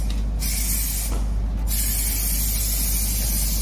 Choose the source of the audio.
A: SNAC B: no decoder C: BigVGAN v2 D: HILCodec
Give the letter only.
B